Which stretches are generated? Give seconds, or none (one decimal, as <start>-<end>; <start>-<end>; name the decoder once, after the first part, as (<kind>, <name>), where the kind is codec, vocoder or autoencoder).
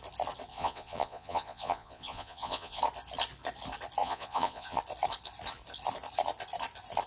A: 0.5-2.8 (vocoder, Vocos); 4.0-4.8